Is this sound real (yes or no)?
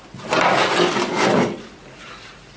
yes